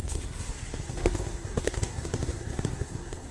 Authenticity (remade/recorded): remade